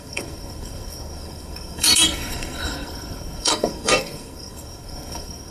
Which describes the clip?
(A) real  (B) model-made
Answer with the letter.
B